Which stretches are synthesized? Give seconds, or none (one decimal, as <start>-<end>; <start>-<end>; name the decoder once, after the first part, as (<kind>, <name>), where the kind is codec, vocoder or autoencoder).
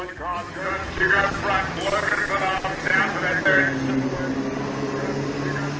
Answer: none